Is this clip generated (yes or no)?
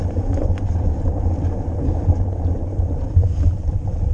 yes